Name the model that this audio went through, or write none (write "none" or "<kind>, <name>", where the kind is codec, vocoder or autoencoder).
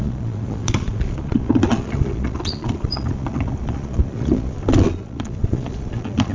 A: vocoder, Vocos